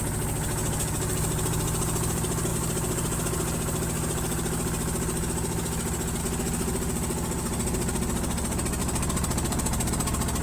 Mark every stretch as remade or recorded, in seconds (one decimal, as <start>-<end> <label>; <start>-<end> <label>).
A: 0.0-8.8 recorded; 8.8-9.9 remade; 9.9-10.4 recorded